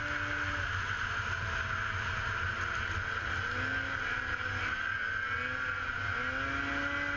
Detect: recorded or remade recorded